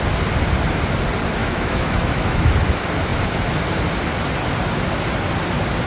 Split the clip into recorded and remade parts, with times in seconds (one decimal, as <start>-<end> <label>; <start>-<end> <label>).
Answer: 0.0-1.4 recorded; 1.4-2.6 remade; 2.6-5.9 recorded